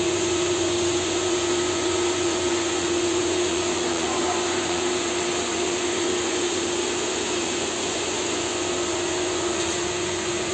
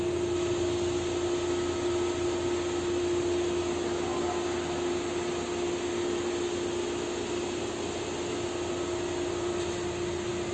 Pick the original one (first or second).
second